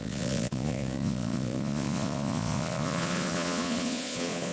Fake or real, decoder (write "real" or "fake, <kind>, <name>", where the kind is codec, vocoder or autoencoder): fake, vocoder, Vocos